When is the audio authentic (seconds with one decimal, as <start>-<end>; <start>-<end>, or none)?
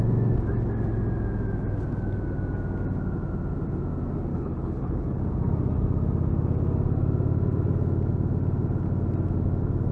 0.0-4.3; 5.2-9.9